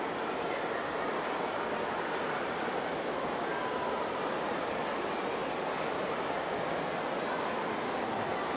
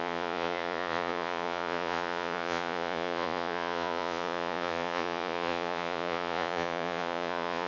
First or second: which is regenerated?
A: second